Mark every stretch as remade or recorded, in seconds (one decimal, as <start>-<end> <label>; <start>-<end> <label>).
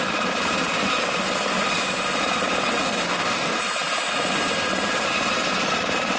0.0-2.8 recorded; 2.8-3.6 remade; 3.6-6.2 recorded